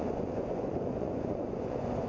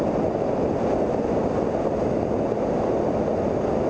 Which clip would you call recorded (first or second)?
second